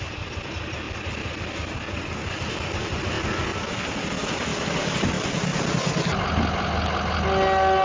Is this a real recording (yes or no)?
yes